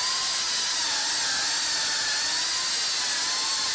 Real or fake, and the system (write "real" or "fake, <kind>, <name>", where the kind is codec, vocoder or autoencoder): real